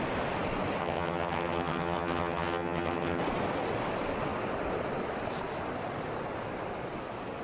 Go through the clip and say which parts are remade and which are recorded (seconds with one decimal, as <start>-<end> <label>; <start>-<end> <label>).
0.0-0.8 recorded; 0.8-3.2 remade; 3.2-7.4 recorded